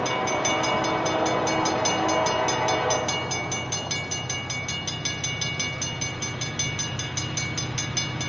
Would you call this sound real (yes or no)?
yes